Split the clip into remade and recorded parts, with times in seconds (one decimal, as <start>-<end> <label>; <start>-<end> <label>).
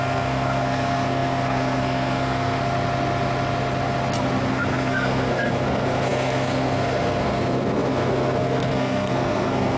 0.0-2.6 remade; 2.6-4.5 recorded; 4.5-9.8 remade